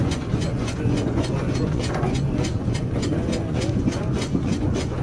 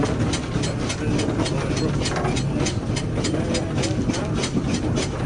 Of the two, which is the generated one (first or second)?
first